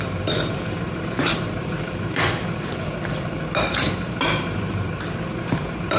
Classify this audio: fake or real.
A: fake